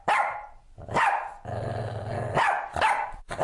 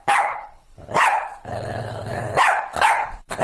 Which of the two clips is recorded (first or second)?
first